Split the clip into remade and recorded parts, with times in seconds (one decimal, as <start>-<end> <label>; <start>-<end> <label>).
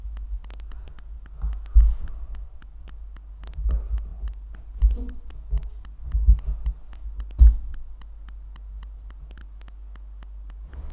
0.0-10.9 recorded